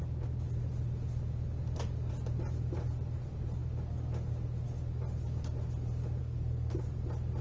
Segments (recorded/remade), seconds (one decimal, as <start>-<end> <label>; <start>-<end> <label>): 0.0-6.2 recorded; 6.2-6.7 remade; 6.7-7.4 recorded